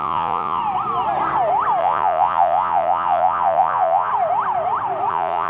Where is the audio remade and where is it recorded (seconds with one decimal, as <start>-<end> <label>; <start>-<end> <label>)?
0.0-0.6 remade; 0.6-1.8 recorded; 1.8-4.1 remade; 4.1-5.1 recorded; 5.1-5.5 remade